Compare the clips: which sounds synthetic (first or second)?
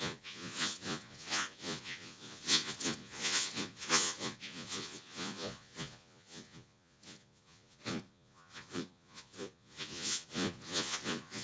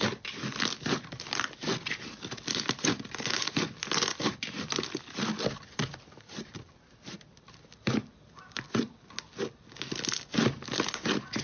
first